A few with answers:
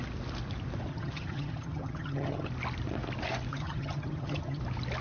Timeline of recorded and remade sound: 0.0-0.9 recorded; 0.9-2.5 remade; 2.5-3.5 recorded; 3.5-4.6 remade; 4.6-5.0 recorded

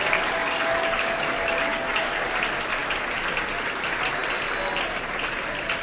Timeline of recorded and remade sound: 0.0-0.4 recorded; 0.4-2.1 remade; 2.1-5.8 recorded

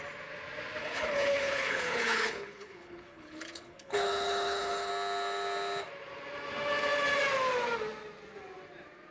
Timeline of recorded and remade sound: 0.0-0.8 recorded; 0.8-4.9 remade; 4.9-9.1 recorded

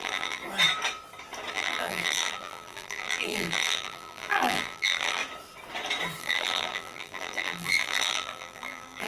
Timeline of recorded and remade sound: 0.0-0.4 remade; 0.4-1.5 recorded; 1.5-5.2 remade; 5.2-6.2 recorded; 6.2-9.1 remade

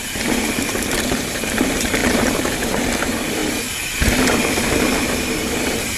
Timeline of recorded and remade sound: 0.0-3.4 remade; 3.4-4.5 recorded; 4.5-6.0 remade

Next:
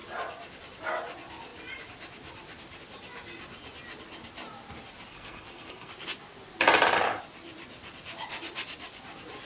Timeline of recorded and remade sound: 0.0-5.1 recorded; 5.1-5.9 remade; 5.9-9.5 recorded